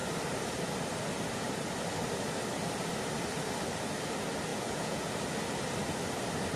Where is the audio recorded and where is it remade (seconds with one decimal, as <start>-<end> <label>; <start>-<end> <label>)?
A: 0.0-4.5 recorded; 4.5-5.1 remade; 5.1-6.6 recorded